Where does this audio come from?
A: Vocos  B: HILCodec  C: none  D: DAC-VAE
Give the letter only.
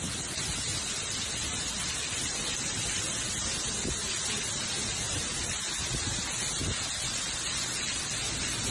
C